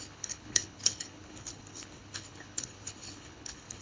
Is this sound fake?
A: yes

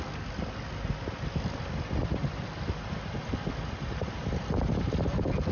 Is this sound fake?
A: no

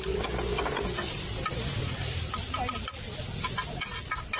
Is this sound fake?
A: no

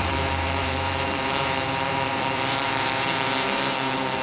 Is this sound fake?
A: yes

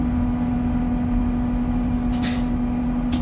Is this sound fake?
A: no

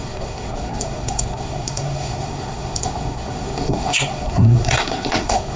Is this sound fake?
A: yes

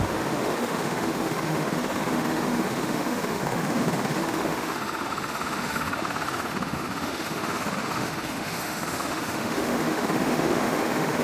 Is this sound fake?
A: yes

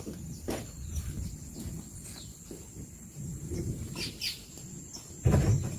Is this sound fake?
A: yes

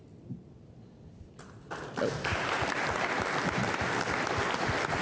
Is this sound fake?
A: no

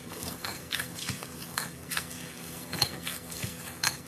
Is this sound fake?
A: yes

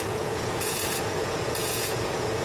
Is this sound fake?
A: yes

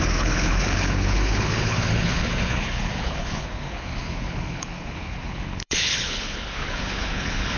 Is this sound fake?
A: yes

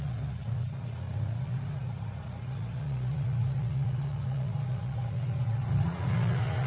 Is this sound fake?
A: yes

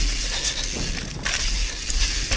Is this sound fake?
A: no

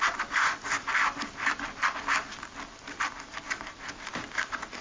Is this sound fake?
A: no